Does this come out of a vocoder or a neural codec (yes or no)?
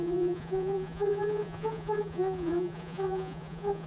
yes